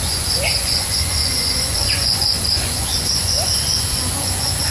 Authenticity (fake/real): fake